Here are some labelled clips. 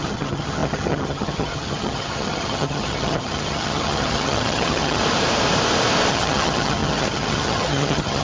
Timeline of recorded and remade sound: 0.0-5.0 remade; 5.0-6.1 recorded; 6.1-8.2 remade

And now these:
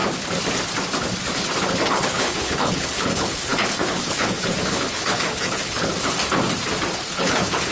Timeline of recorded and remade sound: 0.0-1.9 recorded; 1.9-5.9 remade; 5.9-6.9 recorded; 6.9-7.7 remade